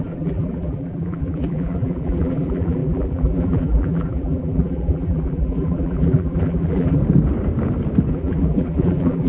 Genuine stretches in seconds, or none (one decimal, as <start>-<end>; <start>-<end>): 7.0-8.1